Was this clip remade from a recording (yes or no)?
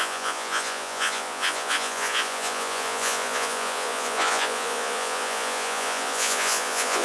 yes